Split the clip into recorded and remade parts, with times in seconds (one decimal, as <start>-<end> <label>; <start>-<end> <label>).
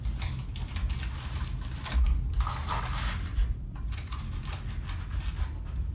0.0-3.3 recorded; 3.3-4.2 remade; 4.2-5.9 recorded